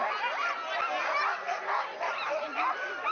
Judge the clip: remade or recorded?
recorded